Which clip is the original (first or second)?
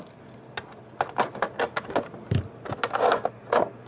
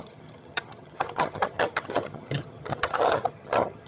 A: first